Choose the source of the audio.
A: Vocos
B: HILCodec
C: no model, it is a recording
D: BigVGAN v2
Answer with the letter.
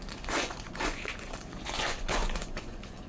A